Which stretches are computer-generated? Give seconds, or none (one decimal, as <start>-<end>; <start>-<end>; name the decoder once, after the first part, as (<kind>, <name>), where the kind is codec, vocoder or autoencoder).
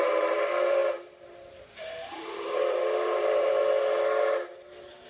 0.0-5.1 (vocoder, BigVGAN v2)